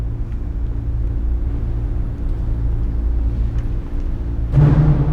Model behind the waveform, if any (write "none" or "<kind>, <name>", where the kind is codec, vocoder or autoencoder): none